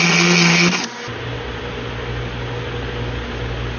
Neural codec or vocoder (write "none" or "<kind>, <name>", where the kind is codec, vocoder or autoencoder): none